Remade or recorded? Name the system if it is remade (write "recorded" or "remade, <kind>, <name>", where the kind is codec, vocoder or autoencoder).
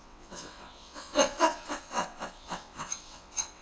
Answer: remade, vocoder, WaveNeXt